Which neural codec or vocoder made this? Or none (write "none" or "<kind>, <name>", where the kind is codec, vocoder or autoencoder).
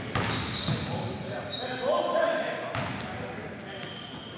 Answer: none